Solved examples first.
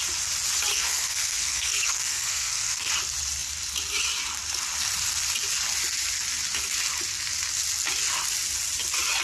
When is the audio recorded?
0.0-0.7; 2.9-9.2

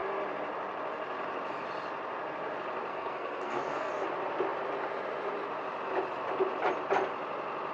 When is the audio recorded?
0.0-2.9; 3.9-7.7

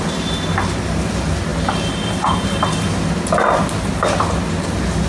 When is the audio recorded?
0.0-5.1

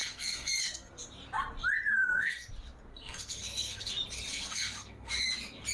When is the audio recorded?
0.9-1.9; 2.5-2.9; 3.9-4.3; 5.1-5.7